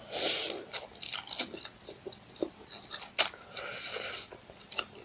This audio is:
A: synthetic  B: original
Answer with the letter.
B